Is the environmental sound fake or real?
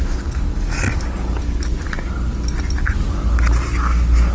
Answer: real